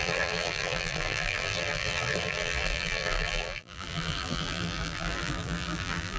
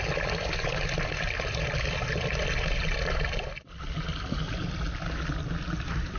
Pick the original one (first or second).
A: second